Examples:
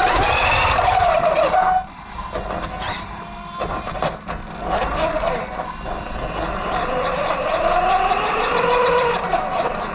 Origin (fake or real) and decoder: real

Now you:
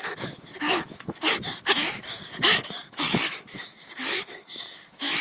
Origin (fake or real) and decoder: fake, autoencoder, DAC-VAE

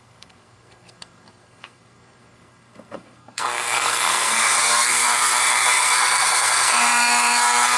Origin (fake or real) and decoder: fake, codec, SNAC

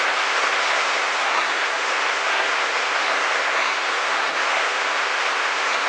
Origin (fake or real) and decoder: fake, codec, SNAC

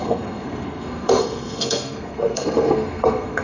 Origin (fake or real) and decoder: fake, codec, SNAC